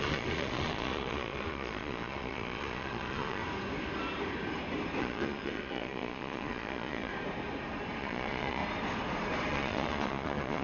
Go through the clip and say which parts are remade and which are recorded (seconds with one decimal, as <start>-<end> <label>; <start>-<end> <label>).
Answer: 0.0-3.4 remade; 3.4-5.0 recorded; 5.0-7.1 remade; 7.1-8.0 recorded; 8.0-8.6 remade; 8.6-9.5 recorded; 9.5-10.6 remade